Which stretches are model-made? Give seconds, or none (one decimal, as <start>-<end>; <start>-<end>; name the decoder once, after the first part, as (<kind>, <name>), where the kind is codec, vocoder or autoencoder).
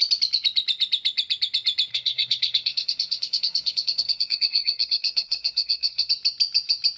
1.9-6.1 (codec, SNAC)